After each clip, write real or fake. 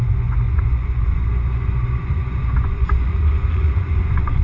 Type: fake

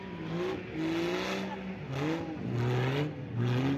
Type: real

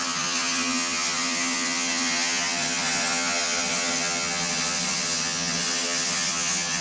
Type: fake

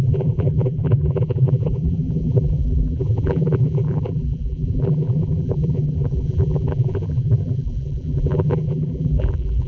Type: fake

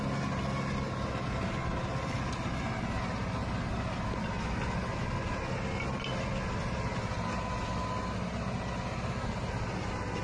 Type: real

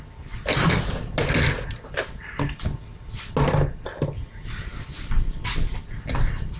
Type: real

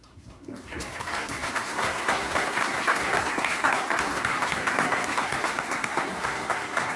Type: fake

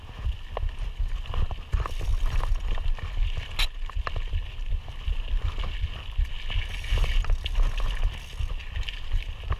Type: real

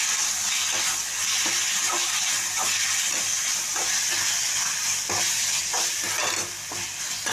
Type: real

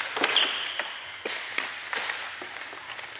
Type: real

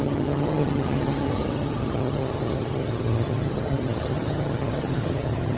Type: fake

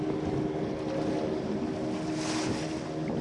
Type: real